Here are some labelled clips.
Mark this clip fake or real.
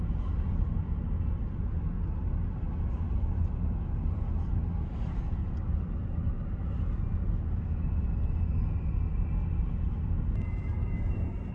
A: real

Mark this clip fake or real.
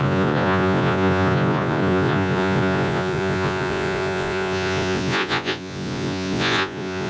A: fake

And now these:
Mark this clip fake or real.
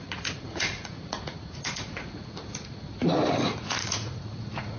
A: fake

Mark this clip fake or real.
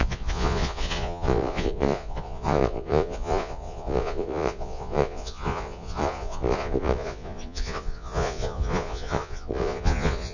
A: fake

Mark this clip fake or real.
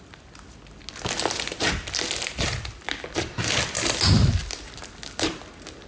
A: real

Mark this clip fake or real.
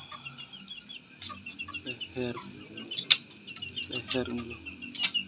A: real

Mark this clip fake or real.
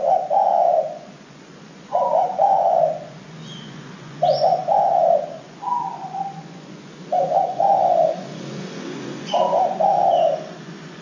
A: fake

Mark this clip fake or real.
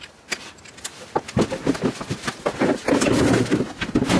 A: real